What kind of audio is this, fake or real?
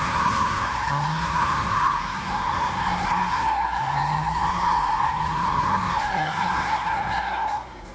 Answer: fake